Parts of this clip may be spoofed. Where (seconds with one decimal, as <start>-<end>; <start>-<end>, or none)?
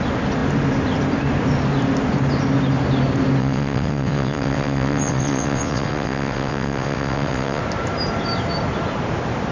3.4-7.6